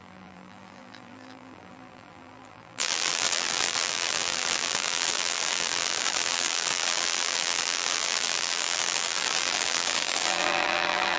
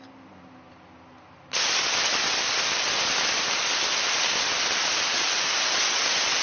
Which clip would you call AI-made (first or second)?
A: first